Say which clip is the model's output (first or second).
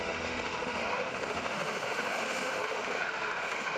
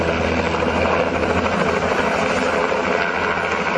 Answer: first